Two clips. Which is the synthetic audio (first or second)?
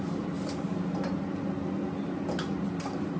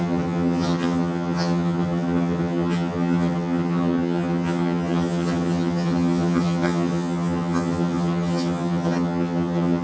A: second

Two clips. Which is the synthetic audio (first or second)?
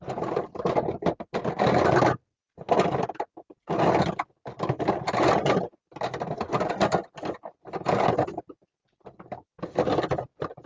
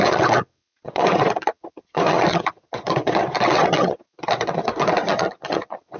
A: second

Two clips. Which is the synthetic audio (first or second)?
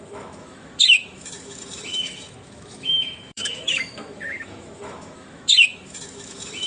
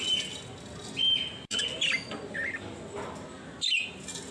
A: first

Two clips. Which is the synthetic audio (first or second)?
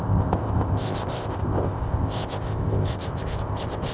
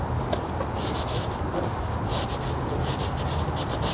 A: first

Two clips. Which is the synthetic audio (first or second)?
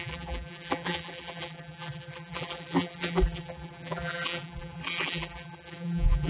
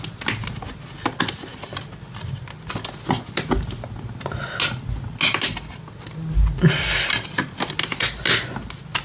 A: first